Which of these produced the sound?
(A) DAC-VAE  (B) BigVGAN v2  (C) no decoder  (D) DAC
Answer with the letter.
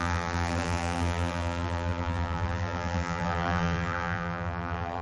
B